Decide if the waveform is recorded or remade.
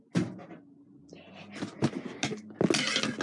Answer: recorded